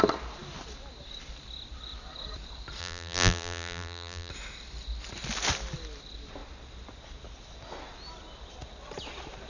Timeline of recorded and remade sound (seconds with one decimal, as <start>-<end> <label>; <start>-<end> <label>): 0.0-2.8 recorded; 2.8-4.3 remade; 4.3-9.5 recorded